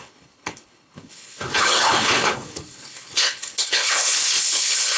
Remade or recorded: remade